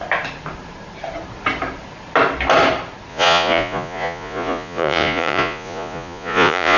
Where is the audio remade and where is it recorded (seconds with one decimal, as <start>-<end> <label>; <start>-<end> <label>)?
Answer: 0.0-3.1 recorded; 3.1-6.8 remade